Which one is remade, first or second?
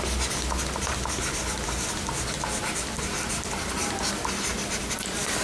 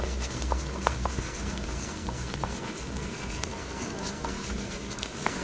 second